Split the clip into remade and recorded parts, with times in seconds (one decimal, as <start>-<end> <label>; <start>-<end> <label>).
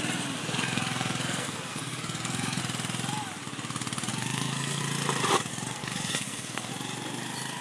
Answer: 0.0-0.4 recorded; 0.4-2.6 remade; 2.6-4.1 recorded; 4.1-4.8 remade; 4.8-5.5 recorded; 5.5-6.7 remade; 6.7-7.6 recorded